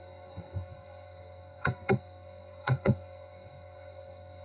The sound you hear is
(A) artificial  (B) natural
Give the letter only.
A